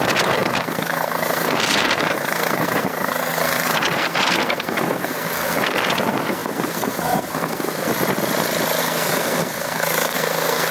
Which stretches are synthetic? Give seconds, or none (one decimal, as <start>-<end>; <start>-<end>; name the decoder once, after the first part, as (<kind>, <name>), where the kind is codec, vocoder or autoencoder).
0.0-7.9 (codec, SNAC); 8.8-10.7